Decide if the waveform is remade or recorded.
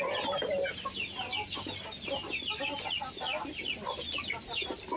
recorded